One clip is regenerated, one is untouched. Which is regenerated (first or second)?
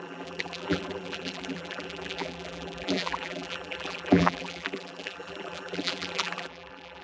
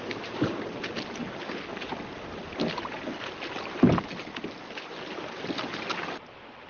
first